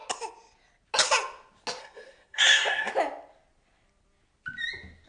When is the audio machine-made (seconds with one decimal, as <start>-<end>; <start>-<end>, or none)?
1.8-2.9

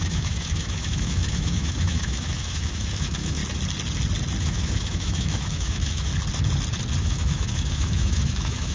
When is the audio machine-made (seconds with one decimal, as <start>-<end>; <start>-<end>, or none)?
0.0-3.4; 4.4-6.1; 7.0-8.7

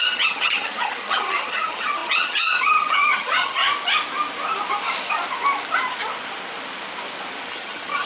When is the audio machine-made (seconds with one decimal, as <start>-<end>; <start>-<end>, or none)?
0.0-3.6; 7.5-8.1

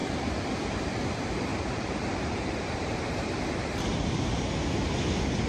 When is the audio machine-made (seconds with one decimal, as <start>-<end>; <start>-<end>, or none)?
0.0-0.8; 1.5-4.2

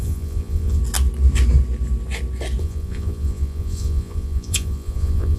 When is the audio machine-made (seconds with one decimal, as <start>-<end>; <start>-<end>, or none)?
0.0-0.8; 2.6-5.4

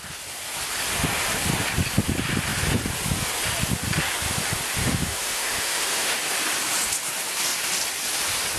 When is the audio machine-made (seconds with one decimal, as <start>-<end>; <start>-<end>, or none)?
4.8-6.2

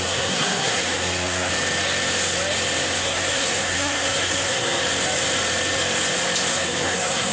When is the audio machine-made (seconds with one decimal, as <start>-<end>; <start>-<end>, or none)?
0.0-1.5; 3.0-4.8; 6.5-7.3

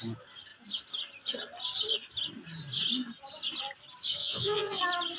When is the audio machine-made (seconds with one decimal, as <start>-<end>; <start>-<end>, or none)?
4.2-4.8